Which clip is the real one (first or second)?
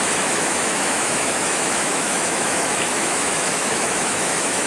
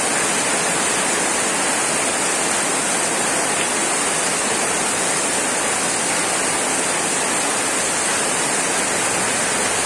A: second